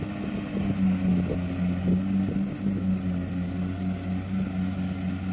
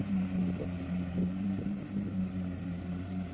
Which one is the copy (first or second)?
second